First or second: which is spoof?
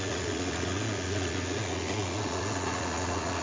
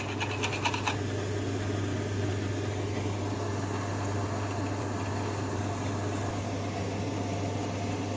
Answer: first